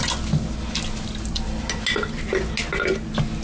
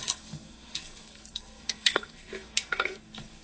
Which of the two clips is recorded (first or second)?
first